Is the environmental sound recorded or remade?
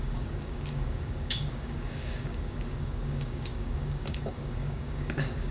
remade